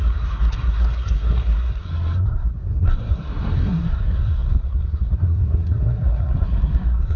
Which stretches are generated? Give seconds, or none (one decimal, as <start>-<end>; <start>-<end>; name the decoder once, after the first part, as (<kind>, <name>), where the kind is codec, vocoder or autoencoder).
0.0-7.2 (codec, SNAC)